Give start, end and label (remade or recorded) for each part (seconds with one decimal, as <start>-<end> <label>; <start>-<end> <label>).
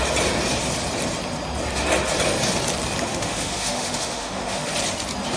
0.0-3.1 recorded; 3.1-4.7 remade; 4.7-5.4 recorded